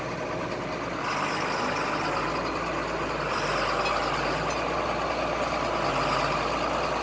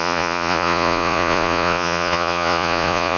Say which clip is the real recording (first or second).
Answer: first